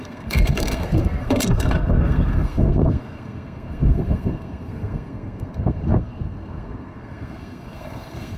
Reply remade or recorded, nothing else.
remade